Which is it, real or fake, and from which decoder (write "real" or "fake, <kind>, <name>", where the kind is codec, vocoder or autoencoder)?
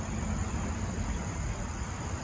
real